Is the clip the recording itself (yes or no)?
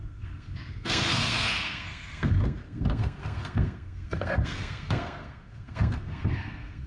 no